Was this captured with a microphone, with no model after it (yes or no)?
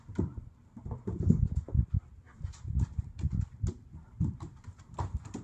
no